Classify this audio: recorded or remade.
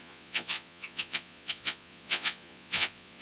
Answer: remade